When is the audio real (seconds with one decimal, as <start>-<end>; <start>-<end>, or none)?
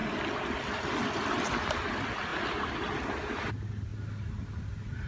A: 0.0-5.1